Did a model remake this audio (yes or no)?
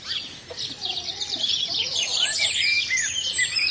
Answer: yes